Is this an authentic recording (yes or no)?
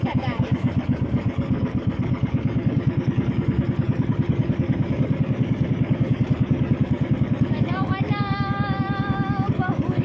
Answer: no